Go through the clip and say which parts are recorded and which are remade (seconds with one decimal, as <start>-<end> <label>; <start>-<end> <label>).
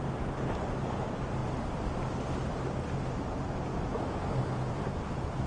0.0-3.7 recorded; 3.7-4.2 remade; 4.2-5.5 recorded